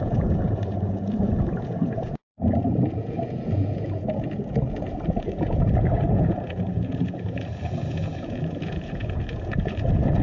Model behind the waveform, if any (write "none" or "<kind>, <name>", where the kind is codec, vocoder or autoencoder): vocoder, Vocos